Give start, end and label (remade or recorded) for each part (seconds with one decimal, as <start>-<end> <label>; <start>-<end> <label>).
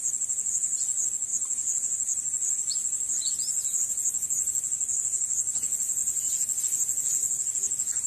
0.0-8.1 recorded